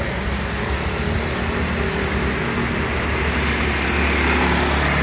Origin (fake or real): real